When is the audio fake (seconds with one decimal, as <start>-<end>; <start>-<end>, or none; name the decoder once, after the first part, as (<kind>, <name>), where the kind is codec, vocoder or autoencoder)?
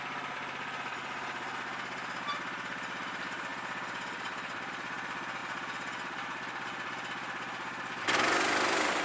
none